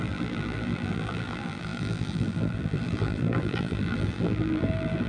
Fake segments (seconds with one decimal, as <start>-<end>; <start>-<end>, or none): 0.0-5.1